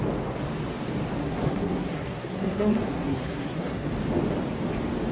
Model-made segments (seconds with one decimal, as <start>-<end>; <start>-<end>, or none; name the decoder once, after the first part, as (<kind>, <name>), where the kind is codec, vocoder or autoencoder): 1.2-3.9 (codec, SNAC)